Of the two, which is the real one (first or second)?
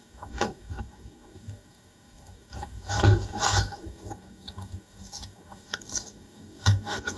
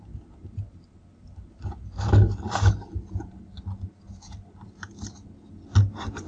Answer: second